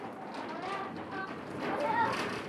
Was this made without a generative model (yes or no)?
yes